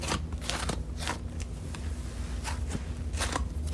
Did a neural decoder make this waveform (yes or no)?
no